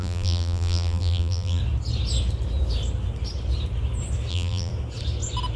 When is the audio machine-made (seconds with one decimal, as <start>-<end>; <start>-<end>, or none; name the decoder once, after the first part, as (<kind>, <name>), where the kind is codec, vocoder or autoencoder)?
0.0-1.6 (vocoder, BigVGAN v2); 4.3-4.7